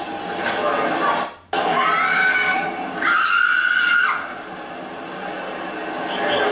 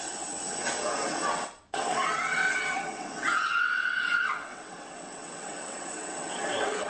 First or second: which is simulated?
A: second